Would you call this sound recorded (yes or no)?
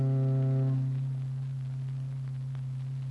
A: yes